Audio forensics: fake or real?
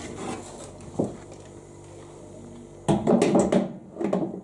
real